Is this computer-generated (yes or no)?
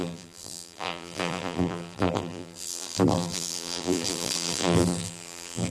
yes